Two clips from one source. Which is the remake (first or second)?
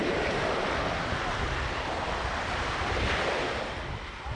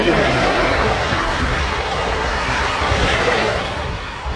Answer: second